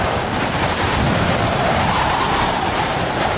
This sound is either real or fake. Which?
real